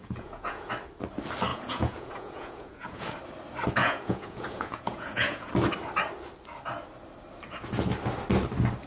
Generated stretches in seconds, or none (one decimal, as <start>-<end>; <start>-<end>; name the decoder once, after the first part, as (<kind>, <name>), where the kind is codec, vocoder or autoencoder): 0.0-0.7 (vocoder, Vocos); 1.5-3.2; 3.8-5.5

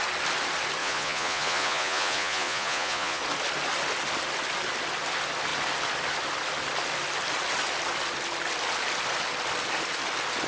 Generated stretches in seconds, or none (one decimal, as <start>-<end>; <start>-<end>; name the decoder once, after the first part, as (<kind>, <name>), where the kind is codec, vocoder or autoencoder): 0.8-3.2 (vocoder, Vocos)

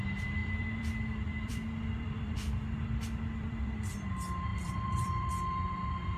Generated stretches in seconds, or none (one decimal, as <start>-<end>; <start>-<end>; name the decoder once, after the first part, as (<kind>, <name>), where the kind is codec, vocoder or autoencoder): 0.4-4.1 (vocoder, BigVGAN v2); 4.5-5.3